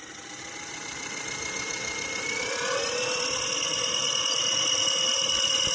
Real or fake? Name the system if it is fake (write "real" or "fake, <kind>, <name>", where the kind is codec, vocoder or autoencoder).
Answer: fake, vocoder, BigVGAN v2